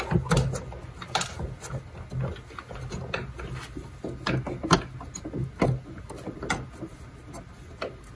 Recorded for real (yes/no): yes